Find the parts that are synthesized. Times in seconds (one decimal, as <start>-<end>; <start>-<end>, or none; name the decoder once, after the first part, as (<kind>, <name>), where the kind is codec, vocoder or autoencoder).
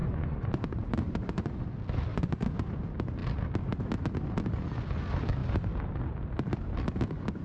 0.0-1.6 (vocoder, Vocos); 2.1-2.8